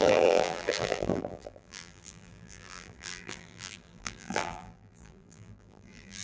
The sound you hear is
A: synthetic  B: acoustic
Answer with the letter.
A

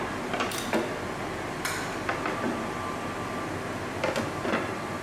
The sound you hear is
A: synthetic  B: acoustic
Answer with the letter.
B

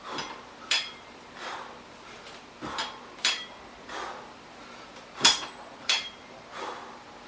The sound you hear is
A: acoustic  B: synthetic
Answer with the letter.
B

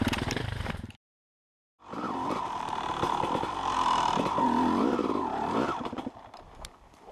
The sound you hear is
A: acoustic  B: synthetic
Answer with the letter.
B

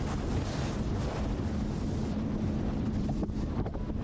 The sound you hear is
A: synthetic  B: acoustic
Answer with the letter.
A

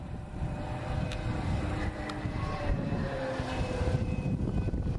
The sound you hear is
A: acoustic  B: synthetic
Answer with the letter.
B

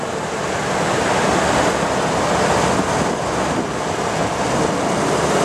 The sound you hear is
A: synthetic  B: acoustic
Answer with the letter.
B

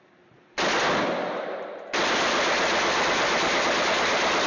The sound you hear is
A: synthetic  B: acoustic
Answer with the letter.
B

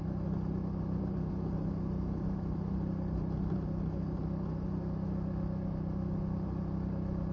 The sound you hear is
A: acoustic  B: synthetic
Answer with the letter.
A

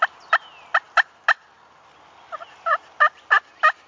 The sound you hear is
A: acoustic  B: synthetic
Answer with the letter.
A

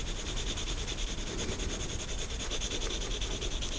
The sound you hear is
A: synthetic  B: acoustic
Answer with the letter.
B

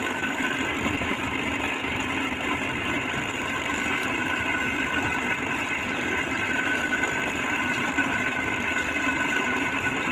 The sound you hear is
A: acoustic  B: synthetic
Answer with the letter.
B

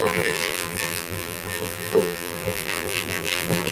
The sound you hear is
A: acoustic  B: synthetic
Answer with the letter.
B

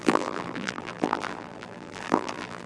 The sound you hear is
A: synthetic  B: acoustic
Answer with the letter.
A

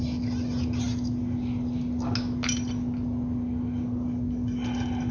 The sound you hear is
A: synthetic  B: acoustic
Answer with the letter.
B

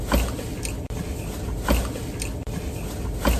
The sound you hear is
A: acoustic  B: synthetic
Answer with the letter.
A